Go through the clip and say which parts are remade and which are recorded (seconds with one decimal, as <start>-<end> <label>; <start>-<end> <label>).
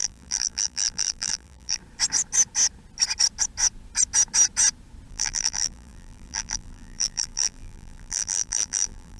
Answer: 0.0-1.8 remade; 1.8-5.1 recorded; 5.1-9.2 remade